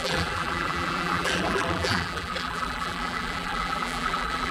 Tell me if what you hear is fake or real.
fake